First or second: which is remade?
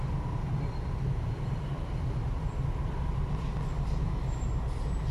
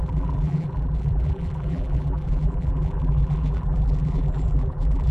second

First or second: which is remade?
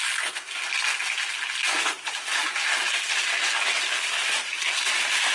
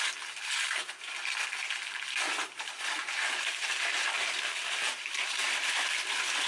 second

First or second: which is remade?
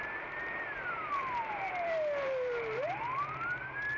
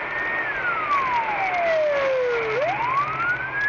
first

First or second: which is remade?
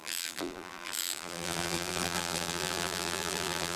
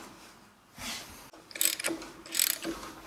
first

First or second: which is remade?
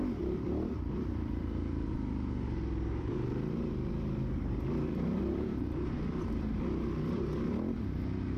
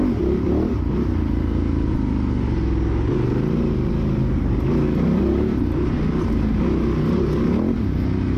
first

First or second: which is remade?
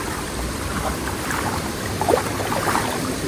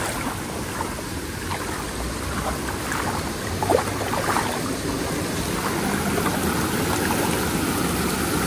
first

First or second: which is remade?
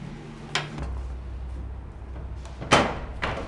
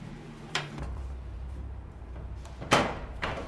second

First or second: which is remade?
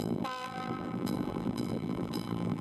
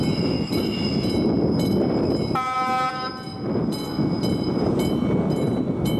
first